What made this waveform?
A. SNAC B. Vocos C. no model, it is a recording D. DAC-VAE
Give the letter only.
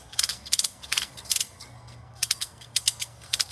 A